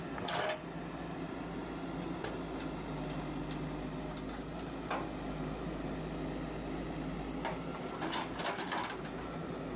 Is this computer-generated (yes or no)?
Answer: no